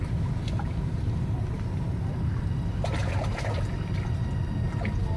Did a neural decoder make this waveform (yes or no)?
no